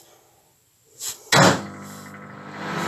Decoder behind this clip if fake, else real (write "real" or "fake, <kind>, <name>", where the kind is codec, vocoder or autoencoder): real